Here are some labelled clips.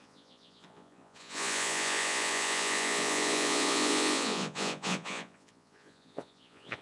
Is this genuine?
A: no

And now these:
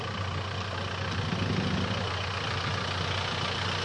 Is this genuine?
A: yes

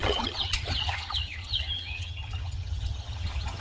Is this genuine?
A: no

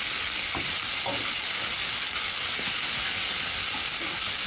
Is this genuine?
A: yes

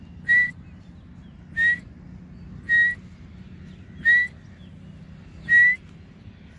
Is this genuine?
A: yes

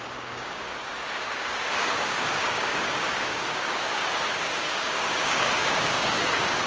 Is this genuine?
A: no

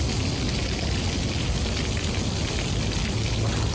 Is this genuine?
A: yes